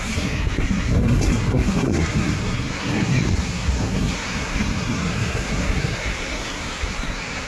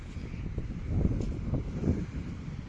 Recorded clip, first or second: second